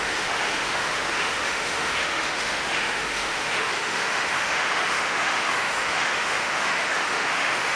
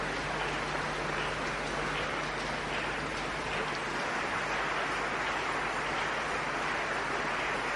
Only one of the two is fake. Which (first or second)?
first